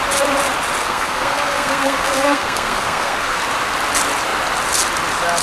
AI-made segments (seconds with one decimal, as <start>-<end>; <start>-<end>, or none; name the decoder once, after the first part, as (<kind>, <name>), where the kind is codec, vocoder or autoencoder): 0.8-3.4 (codec, SNAC)